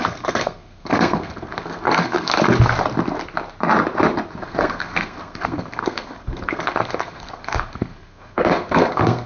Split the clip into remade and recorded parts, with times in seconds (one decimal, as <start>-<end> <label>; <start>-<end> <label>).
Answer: 0.0-2.3 remade; 2.3-4.4 recorded; 4.4-9.3 remade